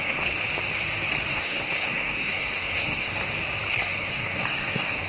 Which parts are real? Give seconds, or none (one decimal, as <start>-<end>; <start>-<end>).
0.4-1.3; 3.2-3.7